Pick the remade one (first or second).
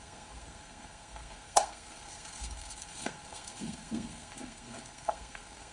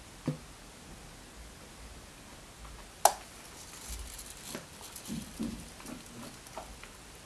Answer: first